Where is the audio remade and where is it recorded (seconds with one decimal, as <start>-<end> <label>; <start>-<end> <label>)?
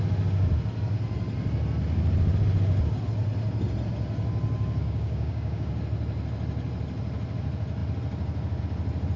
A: 0.0-4.8 recorded; 4.8-5.7 remade; 5.7-9.2 recorded